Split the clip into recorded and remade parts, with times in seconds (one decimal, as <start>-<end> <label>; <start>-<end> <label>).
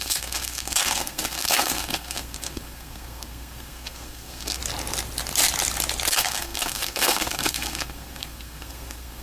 0.0-4.6 remade; 4.6-6.1 recorded; 6.1-9.2 remade